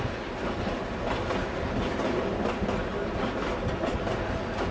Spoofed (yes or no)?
no